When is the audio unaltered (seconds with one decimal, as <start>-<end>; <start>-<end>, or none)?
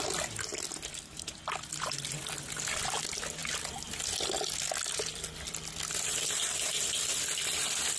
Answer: 0.0-8.0